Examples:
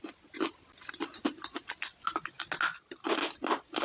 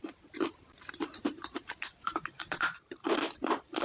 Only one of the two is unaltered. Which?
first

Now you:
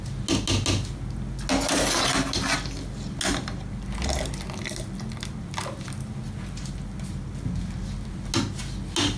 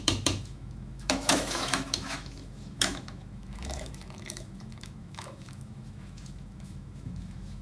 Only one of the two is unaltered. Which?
first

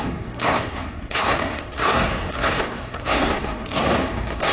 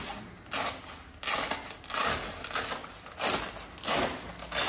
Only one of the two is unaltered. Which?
second